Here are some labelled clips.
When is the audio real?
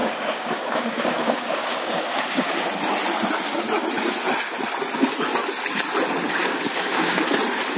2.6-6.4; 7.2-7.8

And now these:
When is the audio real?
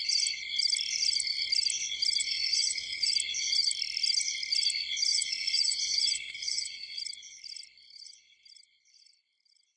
0.0-2.2; 3.1-5.1; 7.0-9.8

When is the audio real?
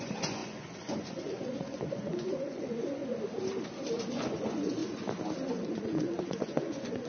3.0-4.1; 4.8-5.5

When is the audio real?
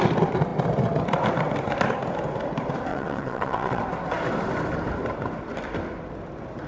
0.0-2.9; 3.8-6.7